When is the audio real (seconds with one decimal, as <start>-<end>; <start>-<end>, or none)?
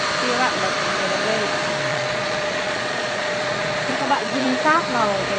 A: 0.0-1.9; 4.8-5.4